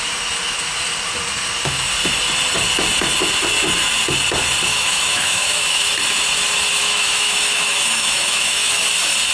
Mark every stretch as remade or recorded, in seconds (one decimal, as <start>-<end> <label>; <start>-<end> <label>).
0.0-4.7 recorded; 4.7-5.9 remade; 5.9-6.8 recorded; 6.8-8.8 remade; 8.8-9.3 recorded